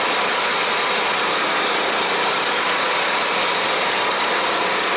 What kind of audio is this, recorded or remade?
recorded